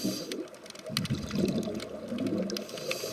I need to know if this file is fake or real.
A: real